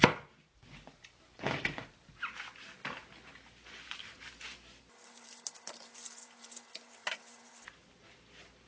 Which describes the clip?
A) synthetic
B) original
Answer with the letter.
B